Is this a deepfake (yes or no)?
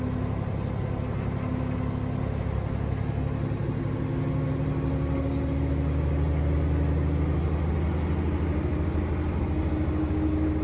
no